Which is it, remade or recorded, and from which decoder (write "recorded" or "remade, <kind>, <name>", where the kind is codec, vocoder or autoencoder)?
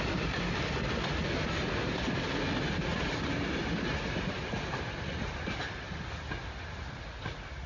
recorded